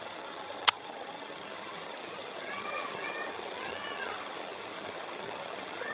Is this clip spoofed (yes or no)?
yes